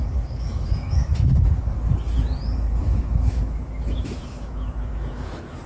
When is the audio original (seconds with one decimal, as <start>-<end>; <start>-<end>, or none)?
1.7-2.8